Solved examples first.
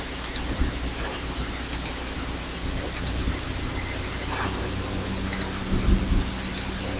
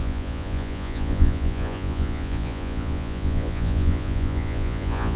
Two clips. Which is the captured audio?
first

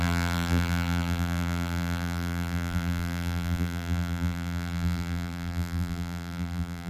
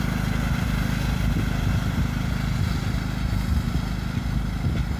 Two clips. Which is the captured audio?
second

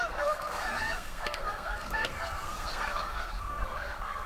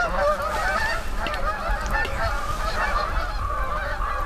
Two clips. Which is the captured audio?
second